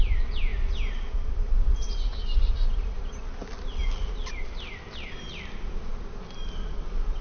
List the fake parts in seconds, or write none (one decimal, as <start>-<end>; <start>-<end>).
none